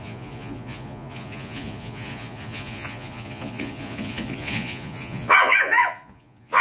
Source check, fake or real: fake